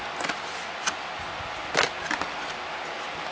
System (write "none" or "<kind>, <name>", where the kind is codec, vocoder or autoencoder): none